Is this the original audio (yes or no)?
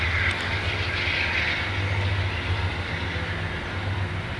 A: yes